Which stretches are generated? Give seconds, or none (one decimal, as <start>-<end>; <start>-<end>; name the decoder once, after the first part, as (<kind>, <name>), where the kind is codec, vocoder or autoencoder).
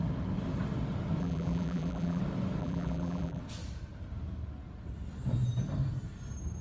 1.2-2.2 (vocoder, BigVGAN v2); 2.6-3.4